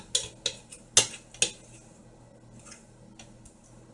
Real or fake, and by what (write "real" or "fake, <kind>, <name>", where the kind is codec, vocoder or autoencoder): real